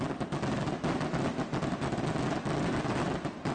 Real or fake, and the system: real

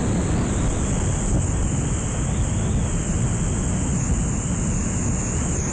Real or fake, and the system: real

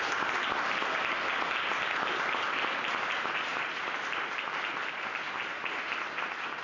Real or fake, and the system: real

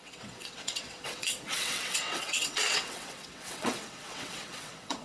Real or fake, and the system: fake, vocoder, WaveNeXt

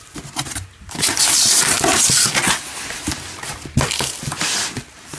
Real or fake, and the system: real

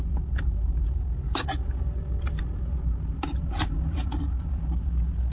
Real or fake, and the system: real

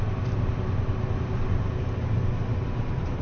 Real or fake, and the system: real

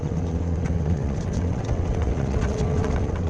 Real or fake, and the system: fake, vocoder, WaveNeXt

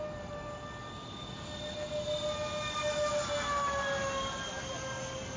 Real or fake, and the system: real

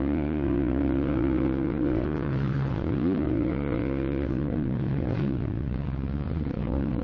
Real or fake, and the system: fake, vocoder, WaveNeXt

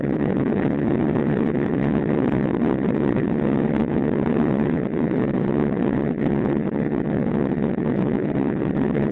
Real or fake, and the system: fake, vocoder, WaveNeXt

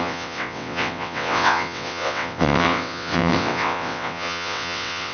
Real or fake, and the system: fake, vocoder, WaveNeXt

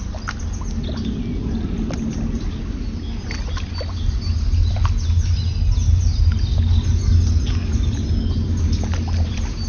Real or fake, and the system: real